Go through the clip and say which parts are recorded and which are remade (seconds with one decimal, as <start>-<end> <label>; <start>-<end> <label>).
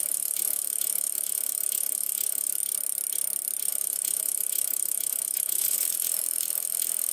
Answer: 0.0-2.6 remade; 2.6-3.7 recorded; 3.7-7.1 remade